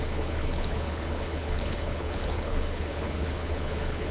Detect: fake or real fake